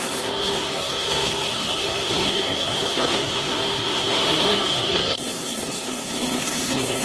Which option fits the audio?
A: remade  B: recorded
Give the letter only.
A